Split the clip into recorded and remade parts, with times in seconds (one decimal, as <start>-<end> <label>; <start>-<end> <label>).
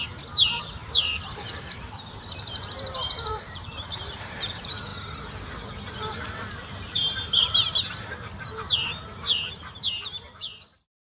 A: 0.0-4.9 remade; 4.9-6.5 recorded; 6.5-11.1 remade